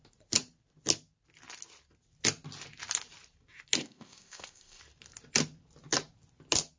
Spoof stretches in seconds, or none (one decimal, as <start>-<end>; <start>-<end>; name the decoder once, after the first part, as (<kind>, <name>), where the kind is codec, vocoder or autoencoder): 3.8-4.8 (codec, ZipCodec)